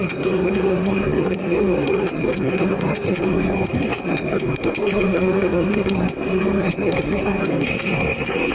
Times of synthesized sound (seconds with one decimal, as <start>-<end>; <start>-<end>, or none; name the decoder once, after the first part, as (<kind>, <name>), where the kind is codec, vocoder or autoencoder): 0.0-8.5 (codec, SNAC)